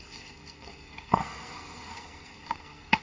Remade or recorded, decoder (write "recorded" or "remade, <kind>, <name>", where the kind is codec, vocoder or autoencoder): remade, codec, SNAC